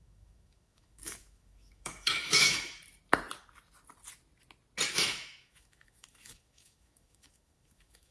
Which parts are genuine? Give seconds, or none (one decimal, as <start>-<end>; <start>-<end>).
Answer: 2.8-4.9